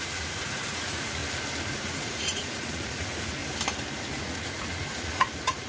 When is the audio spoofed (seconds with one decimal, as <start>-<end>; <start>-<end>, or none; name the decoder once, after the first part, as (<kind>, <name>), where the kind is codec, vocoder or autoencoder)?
0.0-1.2 (vocoder, Vocos); 1.7-3.4; 4.1-5.7